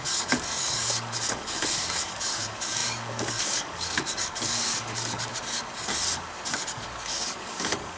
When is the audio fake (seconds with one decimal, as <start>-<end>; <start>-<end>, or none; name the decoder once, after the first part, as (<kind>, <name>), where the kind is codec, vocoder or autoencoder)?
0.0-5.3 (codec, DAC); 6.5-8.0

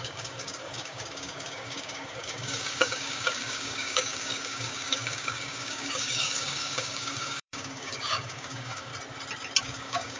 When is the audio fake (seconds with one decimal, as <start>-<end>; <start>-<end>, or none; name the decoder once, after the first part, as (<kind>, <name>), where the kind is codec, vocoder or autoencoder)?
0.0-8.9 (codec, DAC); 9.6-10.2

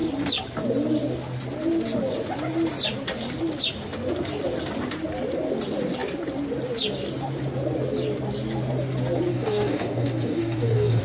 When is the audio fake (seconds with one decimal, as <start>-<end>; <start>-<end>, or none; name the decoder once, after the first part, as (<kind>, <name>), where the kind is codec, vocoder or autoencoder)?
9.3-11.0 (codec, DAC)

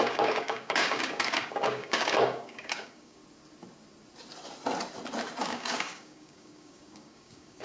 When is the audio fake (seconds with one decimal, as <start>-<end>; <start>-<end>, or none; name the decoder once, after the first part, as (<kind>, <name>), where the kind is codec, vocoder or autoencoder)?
0.0-3.2 (codec, DAC); 5.4-7.6

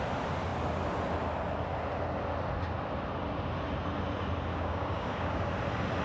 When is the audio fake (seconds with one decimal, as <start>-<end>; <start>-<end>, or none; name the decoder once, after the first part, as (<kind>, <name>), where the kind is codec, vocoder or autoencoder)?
4.5-5.5 (codec, DAC)

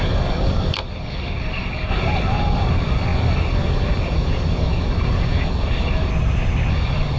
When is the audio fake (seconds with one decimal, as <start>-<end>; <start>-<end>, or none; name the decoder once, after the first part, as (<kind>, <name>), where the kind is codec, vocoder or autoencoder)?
0.0-6.1 (codec, DAC); 6.7-7.2

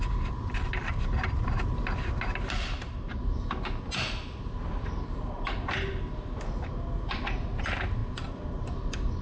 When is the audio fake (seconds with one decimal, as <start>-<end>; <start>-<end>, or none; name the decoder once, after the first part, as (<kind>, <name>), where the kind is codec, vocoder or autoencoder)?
none

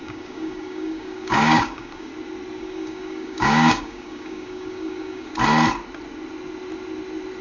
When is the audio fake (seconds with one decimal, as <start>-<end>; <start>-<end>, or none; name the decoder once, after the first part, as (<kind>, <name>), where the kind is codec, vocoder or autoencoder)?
0.0-2.1 (codec, DAC); 2.6-5.3